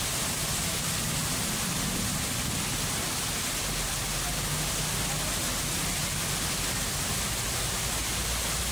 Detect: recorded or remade recorded